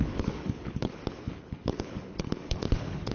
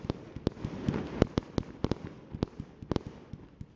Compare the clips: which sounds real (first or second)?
second